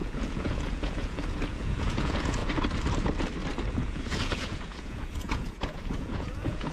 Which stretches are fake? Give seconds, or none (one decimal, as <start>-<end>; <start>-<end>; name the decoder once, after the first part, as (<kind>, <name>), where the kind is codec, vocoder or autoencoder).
0.0-2.4 (vocoder, Vocos); 3.7-6.7